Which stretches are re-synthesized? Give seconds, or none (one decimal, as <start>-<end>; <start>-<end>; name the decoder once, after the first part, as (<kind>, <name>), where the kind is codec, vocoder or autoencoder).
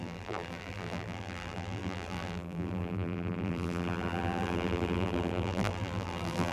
0.0-6.5 (vocoder, BigVGAN v2)